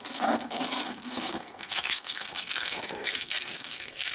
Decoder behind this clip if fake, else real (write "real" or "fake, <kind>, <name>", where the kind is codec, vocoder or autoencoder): fake, codec, SNAC